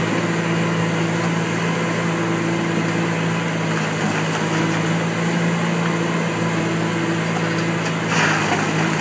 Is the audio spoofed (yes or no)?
no